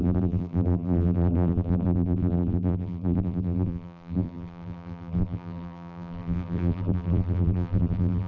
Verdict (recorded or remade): remade